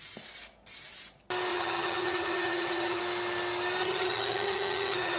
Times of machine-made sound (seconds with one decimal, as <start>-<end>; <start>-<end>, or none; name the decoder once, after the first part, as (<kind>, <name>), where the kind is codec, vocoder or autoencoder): 1.5-3.0 (vocoder, HiFi-GAN); 3.8-5.2